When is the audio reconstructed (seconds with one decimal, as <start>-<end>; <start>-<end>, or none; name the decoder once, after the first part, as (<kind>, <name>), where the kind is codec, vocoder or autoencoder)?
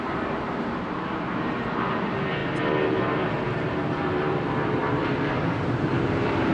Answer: 0.0-2.4 (vocoder, BigVGAN v2); 3.0-6.5